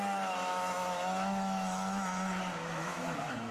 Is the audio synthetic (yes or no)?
yes